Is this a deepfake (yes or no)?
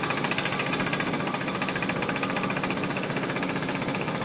no